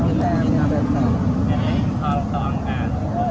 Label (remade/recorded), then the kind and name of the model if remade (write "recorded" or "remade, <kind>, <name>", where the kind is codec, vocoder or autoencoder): recorded